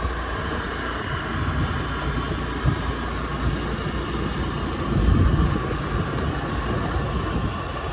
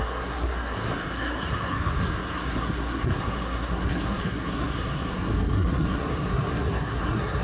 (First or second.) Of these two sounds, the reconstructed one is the second